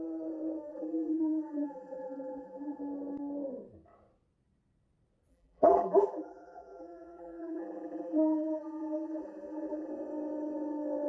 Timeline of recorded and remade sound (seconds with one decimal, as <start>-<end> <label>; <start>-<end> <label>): 0.0-0.7 recorded; 0.7-2.8 remade; 2.8-5.3 recorded; 5.3-9.9 remade; 9.9-11.1 recorded